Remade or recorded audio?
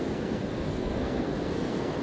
remade